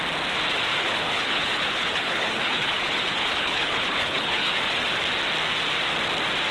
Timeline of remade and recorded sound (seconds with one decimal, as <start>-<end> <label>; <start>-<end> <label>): 0.0-0.7 recorded; 0.7-4.6 remade; 4.6-6.5 recorded